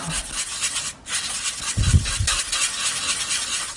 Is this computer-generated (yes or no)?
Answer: no